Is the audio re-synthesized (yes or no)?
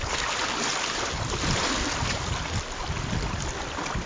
no